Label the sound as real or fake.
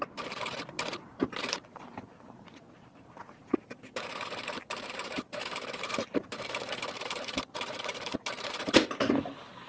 fake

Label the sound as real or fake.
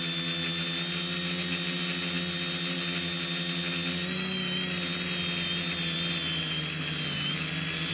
real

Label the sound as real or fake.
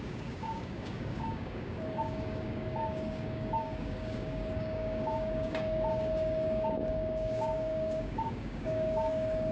fake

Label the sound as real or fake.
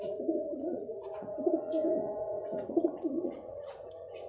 fake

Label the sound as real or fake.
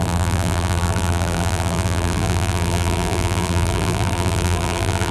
fake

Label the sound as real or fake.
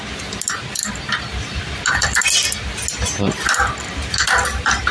real